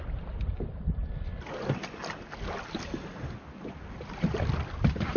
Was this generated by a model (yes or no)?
no